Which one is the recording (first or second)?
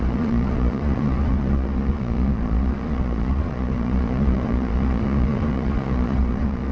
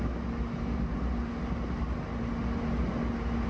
second